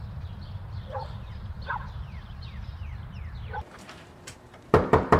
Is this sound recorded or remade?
remade